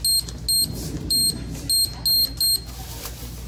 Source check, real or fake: real